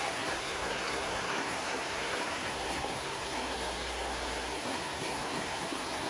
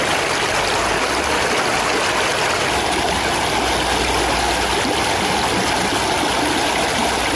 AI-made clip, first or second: first